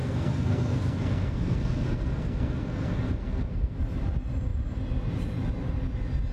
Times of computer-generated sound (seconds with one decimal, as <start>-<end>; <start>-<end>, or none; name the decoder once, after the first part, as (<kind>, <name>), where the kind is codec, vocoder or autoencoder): 0.0-3.8 (codec, SNAC)